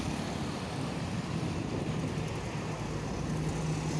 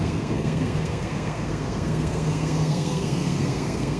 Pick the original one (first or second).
first